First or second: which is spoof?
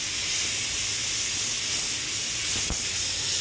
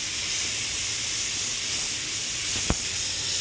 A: second